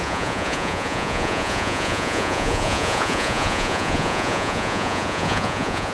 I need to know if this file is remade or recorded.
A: remade